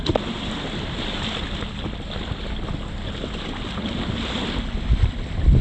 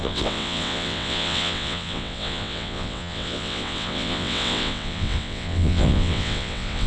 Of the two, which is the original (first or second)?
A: first